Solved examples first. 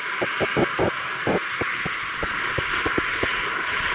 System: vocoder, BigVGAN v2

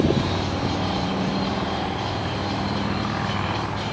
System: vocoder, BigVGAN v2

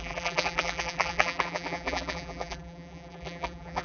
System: vocoder, BigVGAN v2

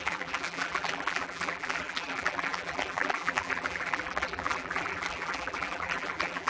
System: vocoder, BigVGAN v2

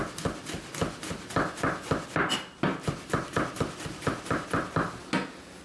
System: none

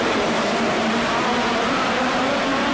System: vocoder, BigVGAN v2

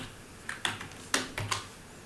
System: none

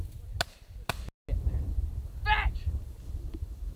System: none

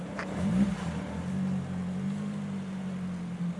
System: none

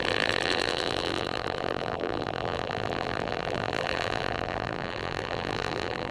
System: vocoder, BigVGAN v2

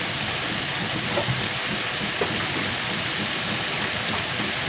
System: vocoder, BigVGAN v2